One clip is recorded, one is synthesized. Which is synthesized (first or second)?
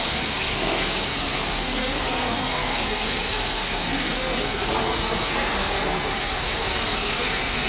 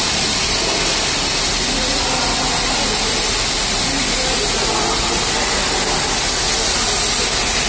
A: first